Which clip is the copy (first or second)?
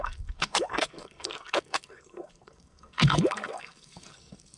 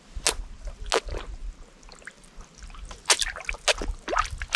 first